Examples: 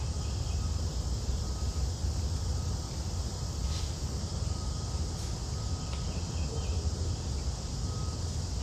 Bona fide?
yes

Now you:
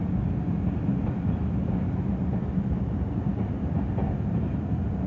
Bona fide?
yes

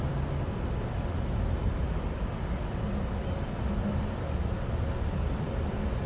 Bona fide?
yes